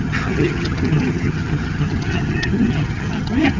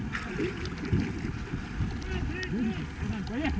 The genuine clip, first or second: second